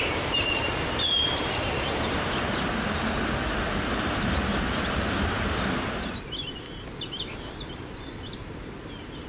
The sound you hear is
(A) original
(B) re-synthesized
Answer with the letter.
A